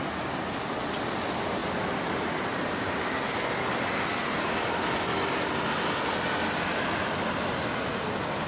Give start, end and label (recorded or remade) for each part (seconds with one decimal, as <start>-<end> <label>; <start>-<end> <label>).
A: 0.0-1.6 recorded; 1.6-3.3 remade; 3.3-8.5 recorded